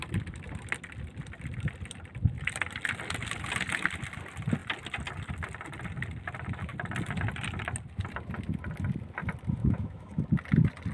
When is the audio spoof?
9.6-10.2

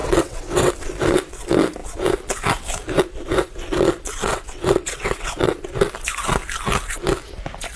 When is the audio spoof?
0.0-0.7; 4.3-5.5

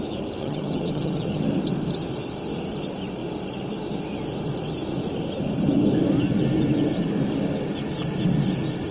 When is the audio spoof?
0.4-1.4